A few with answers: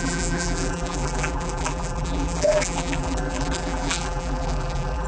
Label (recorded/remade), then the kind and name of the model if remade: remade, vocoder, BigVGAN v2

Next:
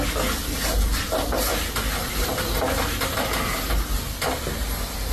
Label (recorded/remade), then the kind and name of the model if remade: recorded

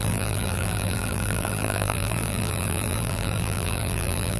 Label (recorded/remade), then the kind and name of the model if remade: remade, vocoder, BigVGAN v2